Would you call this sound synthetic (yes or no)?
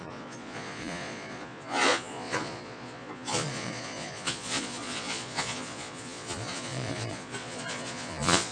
yes